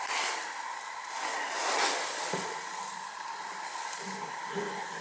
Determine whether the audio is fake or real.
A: real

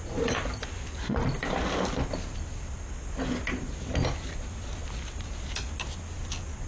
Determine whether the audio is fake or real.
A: real